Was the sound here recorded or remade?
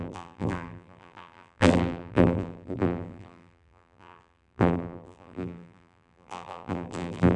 remade